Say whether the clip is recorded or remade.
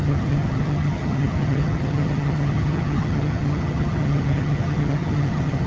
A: remade